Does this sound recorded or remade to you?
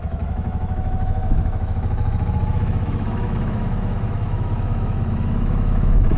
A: remade